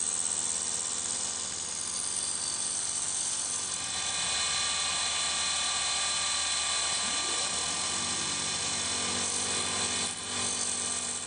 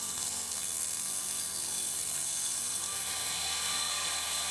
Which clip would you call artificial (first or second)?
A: second